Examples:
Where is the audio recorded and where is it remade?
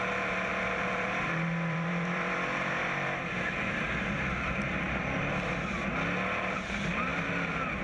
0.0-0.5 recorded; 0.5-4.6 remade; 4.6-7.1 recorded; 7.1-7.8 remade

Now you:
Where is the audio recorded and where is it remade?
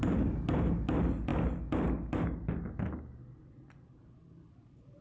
0.0-5.0 recorded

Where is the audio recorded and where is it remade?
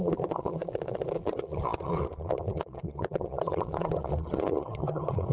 0.0-5.3 remade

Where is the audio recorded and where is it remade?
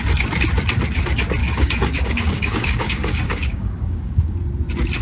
0.0-1.4 recorded; 1.4-4.4 remade; 4.4-5.0 recorded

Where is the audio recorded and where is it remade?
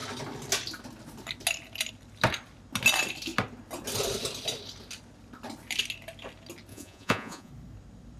0.0-6.7 recorded; 6.7-7.5 remade; 7.5-8.2 recorded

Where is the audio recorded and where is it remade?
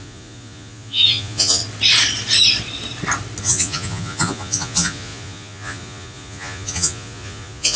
0.0-1.6 remade; 1.6-3.4 recorded; 3.4-7.8 remade